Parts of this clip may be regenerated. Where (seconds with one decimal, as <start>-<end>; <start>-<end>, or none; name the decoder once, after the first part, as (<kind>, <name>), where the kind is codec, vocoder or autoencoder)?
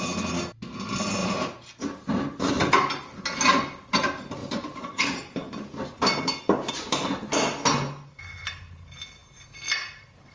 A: 1.2-2.1 (vocoder, BigVGAN v2); 4.4-6.7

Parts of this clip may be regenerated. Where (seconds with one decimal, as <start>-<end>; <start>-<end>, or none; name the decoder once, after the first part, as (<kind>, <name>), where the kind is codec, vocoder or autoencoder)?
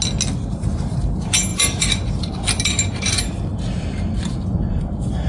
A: 1.5-2.3 (vocoder, BigVGAN v2); 3.5-4.4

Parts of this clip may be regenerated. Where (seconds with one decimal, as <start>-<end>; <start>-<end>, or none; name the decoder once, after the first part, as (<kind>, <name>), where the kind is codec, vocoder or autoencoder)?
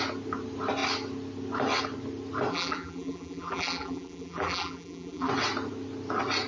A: 2.5-5.3 (vocoder, BigVGAN v2)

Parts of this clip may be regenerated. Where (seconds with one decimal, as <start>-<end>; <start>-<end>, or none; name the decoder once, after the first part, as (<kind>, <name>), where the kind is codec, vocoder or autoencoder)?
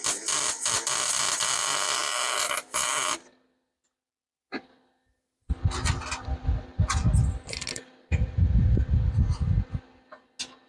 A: none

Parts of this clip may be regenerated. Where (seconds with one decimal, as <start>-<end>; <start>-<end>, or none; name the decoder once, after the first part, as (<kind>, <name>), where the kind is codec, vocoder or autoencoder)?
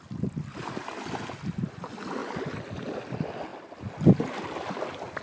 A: none